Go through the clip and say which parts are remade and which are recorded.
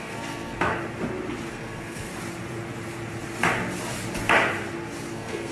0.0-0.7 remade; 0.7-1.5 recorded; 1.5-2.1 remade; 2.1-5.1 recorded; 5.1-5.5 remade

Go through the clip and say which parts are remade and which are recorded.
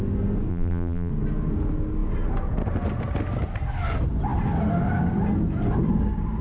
0.0-0.5 recorded; 0.5-1.1 remade; 1.1-6.4 recorded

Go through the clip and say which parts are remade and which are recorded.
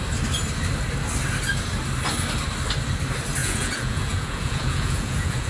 0.0-3.4 recorded; 3.4-5.5 remade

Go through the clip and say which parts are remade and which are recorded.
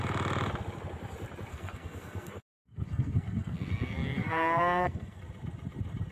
0.0-1.5 recorded; 1.5-5.2 remade; 5.2-6.1 recorded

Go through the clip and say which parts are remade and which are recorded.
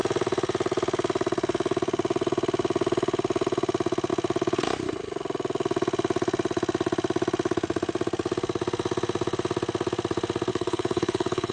0.0-10.5 recorded; 10.5-11.5 remade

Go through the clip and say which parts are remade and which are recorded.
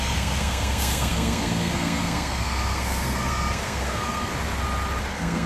0.0-4.3 remade; 4.3-5.0 recorded; 5.0-5.5 remade